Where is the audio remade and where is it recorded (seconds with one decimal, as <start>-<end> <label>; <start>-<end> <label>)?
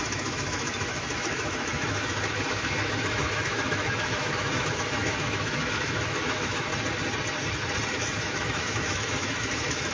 0.0-6.7 remade; 6.7-7.9 recorded; 7.9-9.9 remade